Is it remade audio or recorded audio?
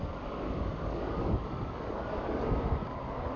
remade